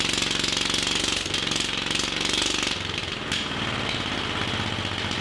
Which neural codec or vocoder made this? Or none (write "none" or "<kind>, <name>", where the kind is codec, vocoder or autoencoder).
none